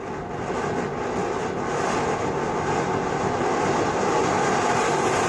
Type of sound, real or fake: real